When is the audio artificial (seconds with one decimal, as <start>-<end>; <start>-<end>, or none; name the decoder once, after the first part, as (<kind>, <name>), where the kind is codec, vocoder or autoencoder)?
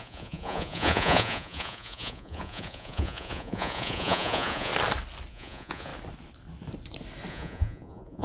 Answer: 0.0-4.7 (vocoder, Vocos); 5.3-5.9; 7.3-8.2